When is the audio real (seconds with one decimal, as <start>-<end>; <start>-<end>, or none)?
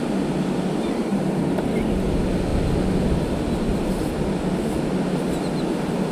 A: 0.0-1.1; 1.7-6.1